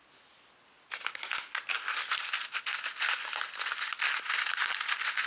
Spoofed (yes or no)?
no